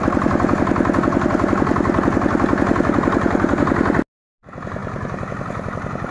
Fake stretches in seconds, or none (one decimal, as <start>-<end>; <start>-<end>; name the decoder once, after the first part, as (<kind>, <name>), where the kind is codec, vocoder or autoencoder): 4.8-6.1 (vocoder, BigVGAN v2)